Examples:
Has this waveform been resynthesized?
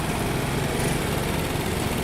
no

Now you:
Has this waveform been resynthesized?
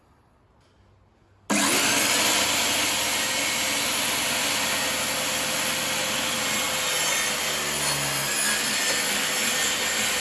no